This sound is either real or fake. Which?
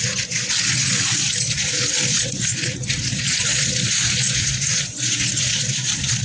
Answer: fake